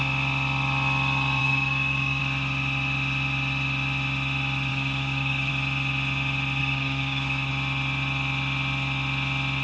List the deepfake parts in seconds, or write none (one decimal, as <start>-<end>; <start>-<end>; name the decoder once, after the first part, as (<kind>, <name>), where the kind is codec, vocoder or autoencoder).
1.4-2.2 (codec, DAC); 4.7-5.5; 6.6-7.5